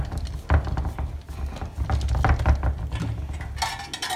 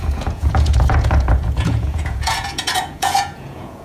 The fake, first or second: second